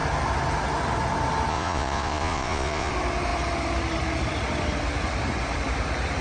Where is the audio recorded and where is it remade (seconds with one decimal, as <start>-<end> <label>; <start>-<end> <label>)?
0.0-1.5 recorded; 1.5-2.9 remade; 2.9-6.2 recorded